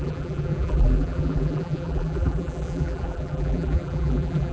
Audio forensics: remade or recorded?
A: remade